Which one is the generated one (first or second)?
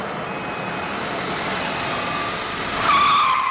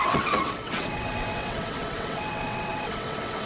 second